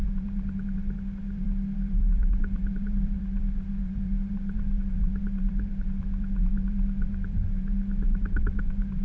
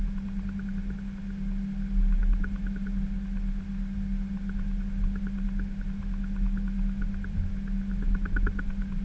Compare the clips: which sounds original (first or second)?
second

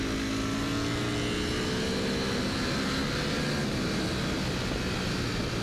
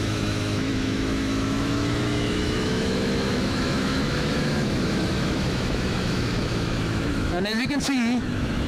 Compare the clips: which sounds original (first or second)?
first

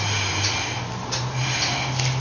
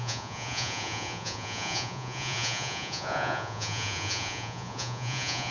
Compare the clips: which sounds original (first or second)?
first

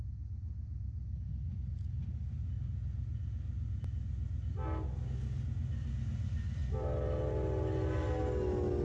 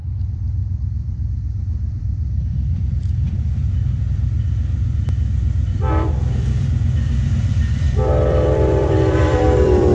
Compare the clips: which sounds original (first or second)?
first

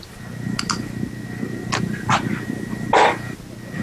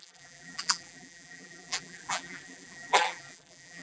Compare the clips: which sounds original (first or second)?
first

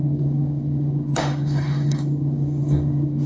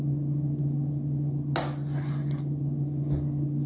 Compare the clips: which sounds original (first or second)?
second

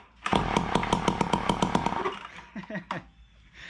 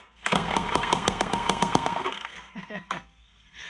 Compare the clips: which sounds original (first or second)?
first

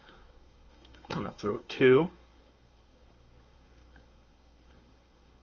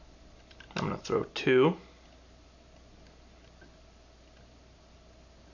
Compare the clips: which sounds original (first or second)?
second